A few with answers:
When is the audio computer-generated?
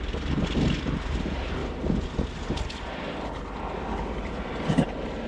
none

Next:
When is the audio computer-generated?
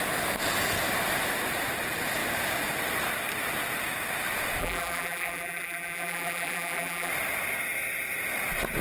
4.6-7.1 (vocoder, BigVGAN v2)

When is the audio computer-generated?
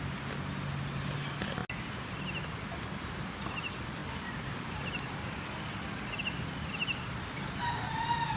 none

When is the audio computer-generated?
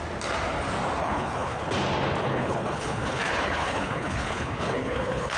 1.0-1.7 (codec, HILCodec); 2.2-5.4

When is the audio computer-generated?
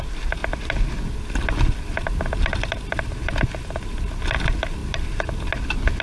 none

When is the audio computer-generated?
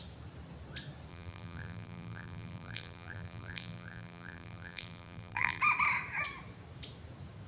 1.1-5.6 (vocoder, BigVGAN v2)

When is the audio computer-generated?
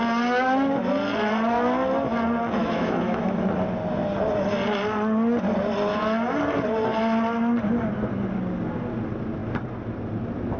2.6-3.4 (autoencoder, DAC-VAE)